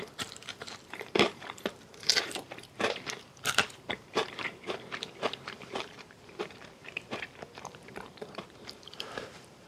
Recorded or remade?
remade